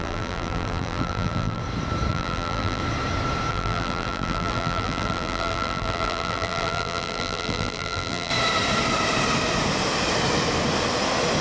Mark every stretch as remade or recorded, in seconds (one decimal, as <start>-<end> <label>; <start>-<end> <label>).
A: 0.0-1.6 remade; 1.6-2.1 recorded; 2.1-2.8 remade; 2.8-3.5 recorded; 3.5-8.3 remade; 8.3-11.4 recorded